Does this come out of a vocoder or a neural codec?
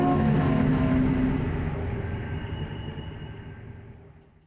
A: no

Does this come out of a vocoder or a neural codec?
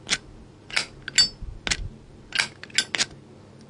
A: no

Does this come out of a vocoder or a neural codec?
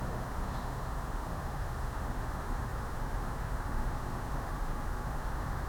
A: yes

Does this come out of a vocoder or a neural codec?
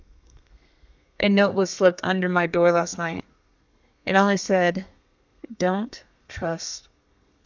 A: yes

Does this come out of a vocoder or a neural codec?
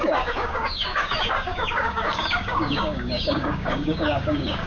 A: yes